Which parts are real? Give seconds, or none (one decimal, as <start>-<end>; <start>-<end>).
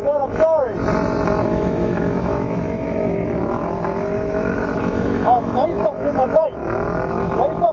0.7-1.5; 6.6-7.1